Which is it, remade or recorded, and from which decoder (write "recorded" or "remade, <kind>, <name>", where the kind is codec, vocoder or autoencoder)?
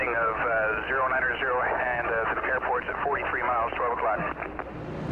recorded